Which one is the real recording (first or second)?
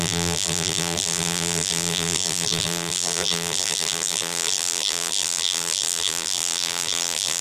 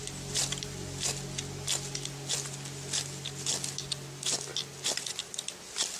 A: second